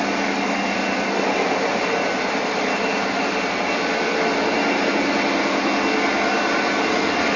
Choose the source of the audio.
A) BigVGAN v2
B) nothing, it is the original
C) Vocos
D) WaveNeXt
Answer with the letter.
B